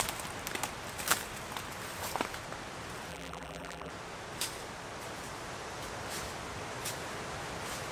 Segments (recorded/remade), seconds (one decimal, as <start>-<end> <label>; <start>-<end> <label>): 0.0-3.1 recorded; 3.1-3.9 remade; 3.9-7.9 recorded